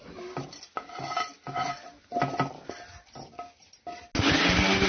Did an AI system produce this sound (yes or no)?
no